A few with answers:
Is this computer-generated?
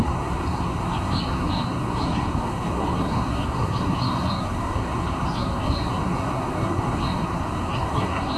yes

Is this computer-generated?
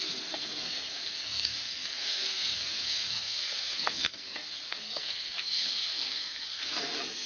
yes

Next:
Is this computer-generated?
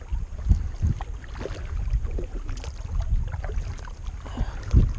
no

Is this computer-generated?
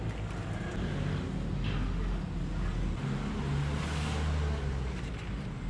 no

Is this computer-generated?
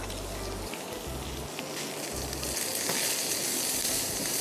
no